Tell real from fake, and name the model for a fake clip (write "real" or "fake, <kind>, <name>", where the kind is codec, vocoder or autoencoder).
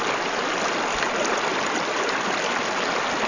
real